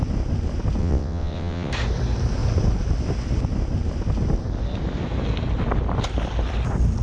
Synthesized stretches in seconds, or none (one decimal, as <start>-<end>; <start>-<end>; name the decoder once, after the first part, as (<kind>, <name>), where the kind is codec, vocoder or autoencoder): 0.8-1.7 (vocoder, WaveNeXt)